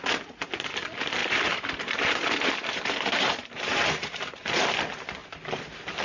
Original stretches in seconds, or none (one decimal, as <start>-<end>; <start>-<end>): 0.0-1.2; 4.4-6.0